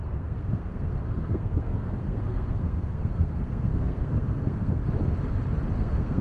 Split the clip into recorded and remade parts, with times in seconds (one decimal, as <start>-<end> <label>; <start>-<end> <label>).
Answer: 0.0-4.8 remade; 4.8-5.8 recorded; 5.8-6.2 remade